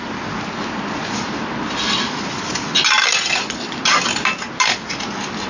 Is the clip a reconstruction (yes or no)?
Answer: no